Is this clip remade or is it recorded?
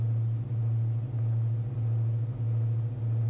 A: recorded